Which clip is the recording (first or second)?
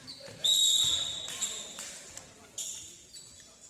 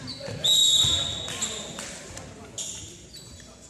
second